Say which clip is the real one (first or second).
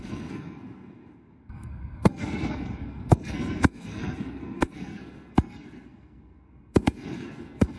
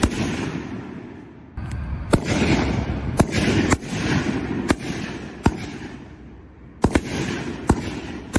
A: second